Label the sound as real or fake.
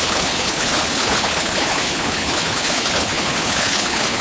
fake